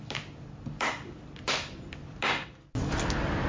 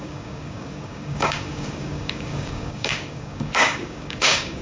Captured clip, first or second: first